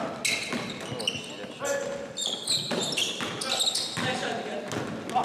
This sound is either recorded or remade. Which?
recorded